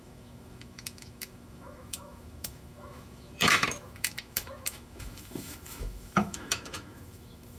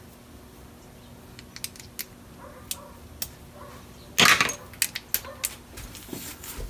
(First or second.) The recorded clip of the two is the second